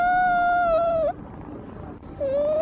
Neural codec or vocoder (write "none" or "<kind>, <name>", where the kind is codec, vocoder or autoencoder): none